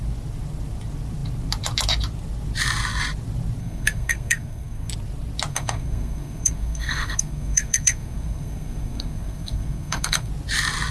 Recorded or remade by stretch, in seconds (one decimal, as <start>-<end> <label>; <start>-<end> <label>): 0.0-3.6 recorded; 3.6-4.9 remade; 4.9-5.5 recorded; 5.5-10.3 remade; 10.3-10.9 recorded